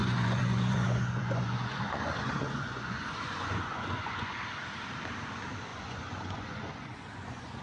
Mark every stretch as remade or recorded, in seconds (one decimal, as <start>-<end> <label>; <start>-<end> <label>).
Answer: 0.0-4.4 remade; 4.4-5.7 recorded; 5.7-7.6 remade